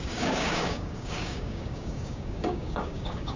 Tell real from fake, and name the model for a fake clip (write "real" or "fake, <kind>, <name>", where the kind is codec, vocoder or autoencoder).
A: fake, codec, DAC